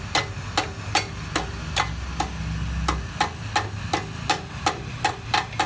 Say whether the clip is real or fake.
real